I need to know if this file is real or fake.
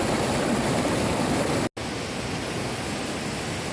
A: real